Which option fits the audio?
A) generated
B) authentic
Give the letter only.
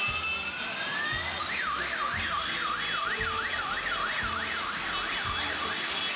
B